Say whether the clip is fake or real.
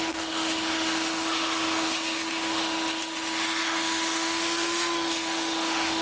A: fake